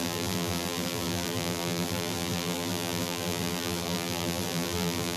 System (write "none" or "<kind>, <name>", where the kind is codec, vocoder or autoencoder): vocoder, BigVGAN v2